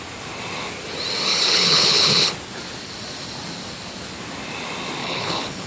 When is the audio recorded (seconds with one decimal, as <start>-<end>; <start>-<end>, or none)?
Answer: 0.0-1.3; 2.3-5.0